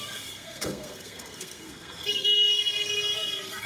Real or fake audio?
fake